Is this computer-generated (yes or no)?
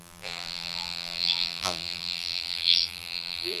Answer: yes